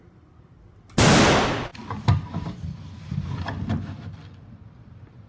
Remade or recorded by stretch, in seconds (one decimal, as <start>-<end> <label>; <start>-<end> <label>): 0.0-5.3 recorded